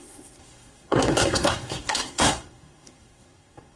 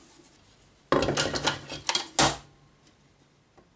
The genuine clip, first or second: second